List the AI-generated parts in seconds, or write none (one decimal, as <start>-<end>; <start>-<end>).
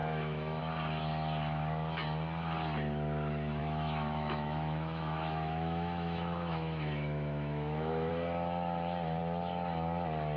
0.0-0.6; 3.6-8.1